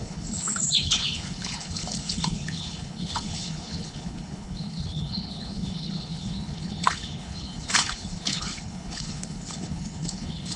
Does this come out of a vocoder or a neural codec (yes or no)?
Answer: yes